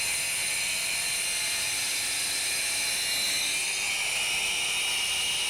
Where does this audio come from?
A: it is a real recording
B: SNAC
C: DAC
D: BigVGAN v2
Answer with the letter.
A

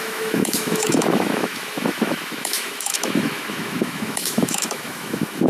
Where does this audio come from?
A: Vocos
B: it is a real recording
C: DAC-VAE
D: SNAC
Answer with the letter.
C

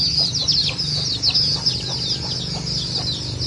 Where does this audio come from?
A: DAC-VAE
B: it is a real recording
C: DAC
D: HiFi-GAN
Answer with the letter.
B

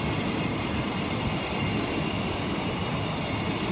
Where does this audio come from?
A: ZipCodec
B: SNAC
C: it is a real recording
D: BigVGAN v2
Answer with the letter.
C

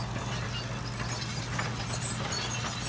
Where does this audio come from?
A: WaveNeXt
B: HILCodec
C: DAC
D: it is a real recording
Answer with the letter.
D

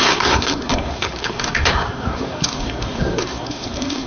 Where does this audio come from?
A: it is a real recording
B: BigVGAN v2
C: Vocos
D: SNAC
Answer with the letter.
D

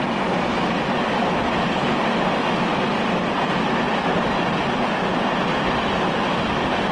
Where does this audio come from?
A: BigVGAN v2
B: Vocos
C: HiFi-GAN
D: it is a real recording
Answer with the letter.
D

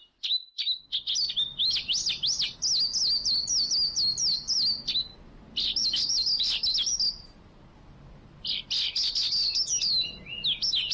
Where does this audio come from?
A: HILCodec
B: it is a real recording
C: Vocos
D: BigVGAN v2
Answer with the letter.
B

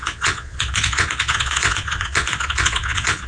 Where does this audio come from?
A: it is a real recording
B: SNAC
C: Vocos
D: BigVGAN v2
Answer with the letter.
C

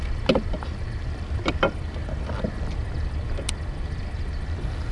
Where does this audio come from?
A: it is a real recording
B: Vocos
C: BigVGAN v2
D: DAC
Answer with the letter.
A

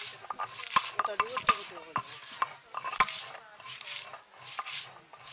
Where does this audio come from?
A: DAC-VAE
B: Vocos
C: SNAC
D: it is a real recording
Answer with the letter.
D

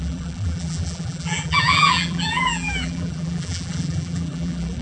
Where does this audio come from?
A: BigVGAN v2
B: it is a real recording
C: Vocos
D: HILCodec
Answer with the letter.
A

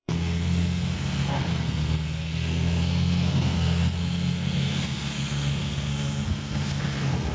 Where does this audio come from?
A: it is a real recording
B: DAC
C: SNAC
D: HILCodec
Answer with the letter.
C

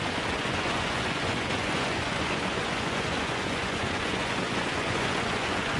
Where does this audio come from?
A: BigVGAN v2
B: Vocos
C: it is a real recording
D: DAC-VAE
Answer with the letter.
B